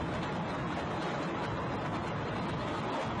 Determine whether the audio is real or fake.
real